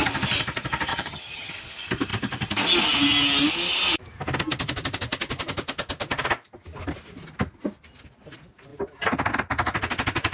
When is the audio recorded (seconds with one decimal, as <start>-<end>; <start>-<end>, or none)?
0.0-0.9; 1.5-10.3